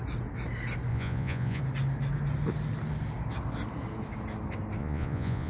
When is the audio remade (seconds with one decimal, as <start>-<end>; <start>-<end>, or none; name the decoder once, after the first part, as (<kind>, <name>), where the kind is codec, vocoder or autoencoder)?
0.9-1.6 (vocoder, Vocos); 4.8-5.5